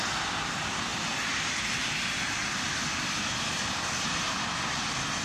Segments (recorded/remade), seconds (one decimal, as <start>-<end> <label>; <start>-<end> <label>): 0.0-0.9 recorded; 0.9-1.6 remade; 1.6-2.4 recorded; 2.4-5.2 remade